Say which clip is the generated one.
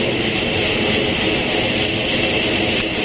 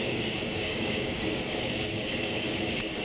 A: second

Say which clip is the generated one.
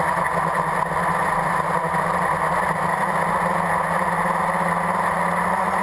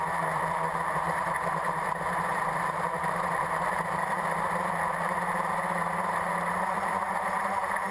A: second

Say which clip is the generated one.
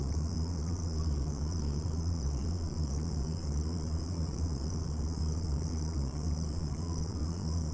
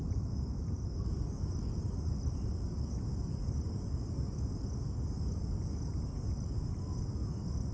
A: first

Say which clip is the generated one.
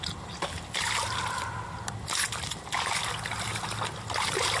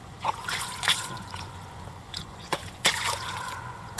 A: second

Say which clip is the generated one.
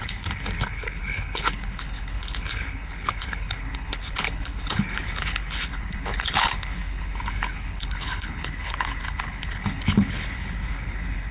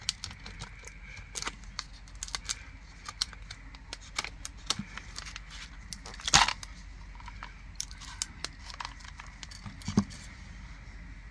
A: first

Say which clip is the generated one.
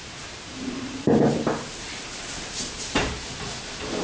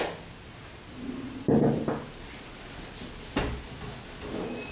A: first